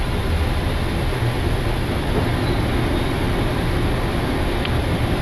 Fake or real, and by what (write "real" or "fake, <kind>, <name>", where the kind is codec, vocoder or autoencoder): real